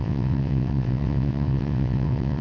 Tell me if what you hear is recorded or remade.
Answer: remade